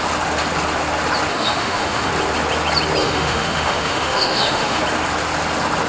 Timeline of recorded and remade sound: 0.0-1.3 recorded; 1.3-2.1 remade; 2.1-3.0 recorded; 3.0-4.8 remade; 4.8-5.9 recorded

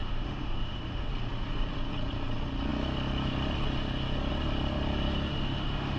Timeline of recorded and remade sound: 0.0-1.1 remade; 1.1-5.3 recorded; 5.3-6.0 remade

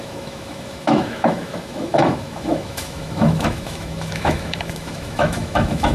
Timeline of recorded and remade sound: 0.0-5.9 remade

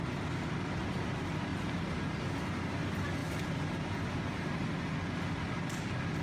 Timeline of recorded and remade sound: 0.0-6.2 recorded

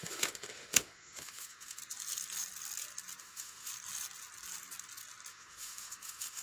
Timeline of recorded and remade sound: 0.0-1.8 remade; 1.8-3.2 recorded; 3.2-3.7 remade; 3.7-5.3 recorded; 5.3-6.4 remade

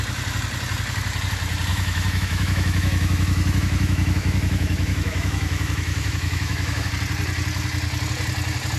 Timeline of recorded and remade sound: 0.0-1.7 recorded; 1.7-6.9 remade; 6.9-8.8 recorded